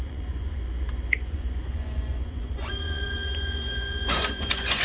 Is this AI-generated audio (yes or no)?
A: yes